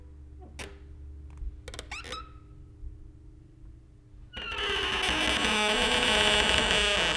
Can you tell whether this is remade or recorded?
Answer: recorded